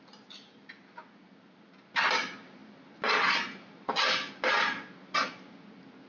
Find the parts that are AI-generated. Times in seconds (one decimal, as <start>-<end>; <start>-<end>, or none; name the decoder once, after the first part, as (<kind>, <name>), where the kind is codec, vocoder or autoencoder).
none